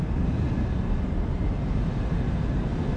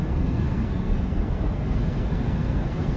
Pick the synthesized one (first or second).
second